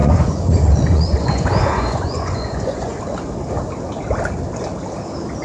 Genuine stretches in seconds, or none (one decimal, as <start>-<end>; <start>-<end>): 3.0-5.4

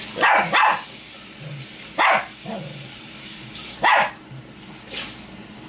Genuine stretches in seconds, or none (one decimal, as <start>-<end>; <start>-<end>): 0.0-5.7

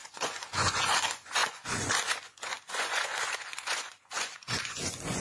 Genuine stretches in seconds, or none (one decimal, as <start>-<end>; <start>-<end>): none